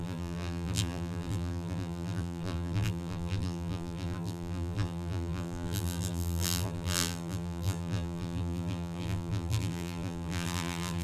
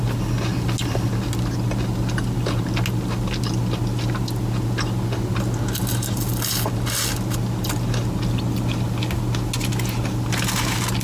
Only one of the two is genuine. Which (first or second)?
second